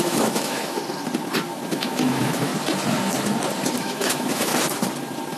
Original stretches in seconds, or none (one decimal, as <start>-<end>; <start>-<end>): 0.8-1.7; 2.5-3.8; 4.5-5.4